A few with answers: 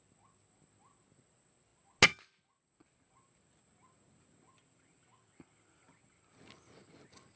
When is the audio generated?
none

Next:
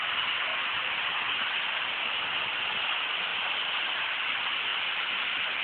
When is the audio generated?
0.5-1.2 (vocoder, BigVGAN v2); 3.3-4.1